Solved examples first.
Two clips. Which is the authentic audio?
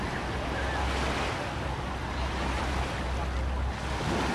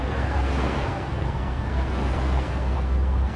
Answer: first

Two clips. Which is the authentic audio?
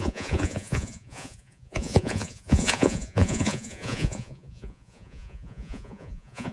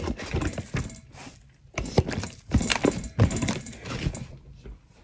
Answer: second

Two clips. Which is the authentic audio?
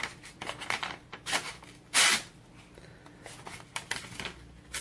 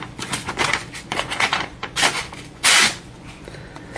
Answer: first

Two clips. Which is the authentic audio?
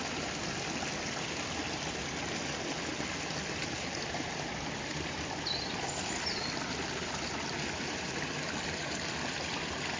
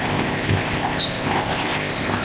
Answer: first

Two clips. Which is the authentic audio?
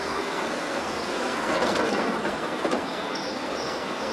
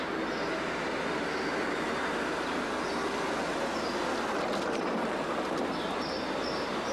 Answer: second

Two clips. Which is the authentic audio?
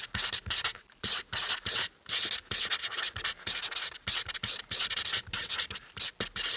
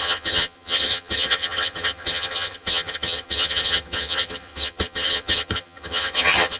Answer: first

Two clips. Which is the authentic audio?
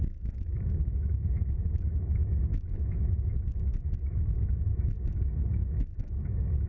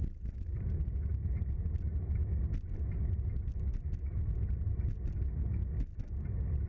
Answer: second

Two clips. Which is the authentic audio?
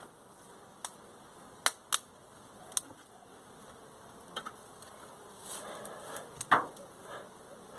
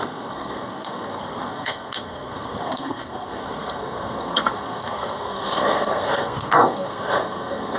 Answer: first